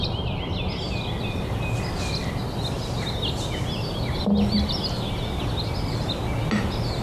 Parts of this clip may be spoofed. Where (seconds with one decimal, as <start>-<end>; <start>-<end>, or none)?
none